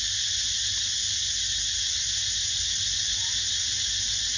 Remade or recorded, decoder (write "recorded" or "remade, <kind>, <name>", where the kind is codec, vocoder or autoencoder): recorded